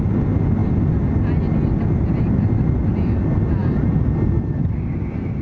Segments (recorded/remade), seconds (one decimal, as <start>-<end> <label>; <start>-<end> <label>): 0.0-5.4 recorded